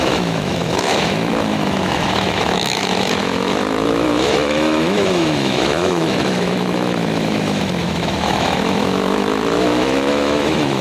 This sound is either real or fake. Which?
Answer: fake